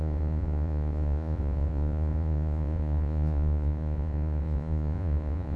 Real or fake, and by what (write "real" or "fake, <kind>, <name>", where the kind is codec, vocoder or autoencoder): fake, vocoder, Vocos